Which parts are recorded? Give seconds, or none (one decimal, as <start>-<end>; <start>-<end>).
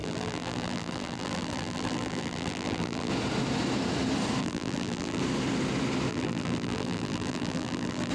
3.1-4.4; 5.2-6.1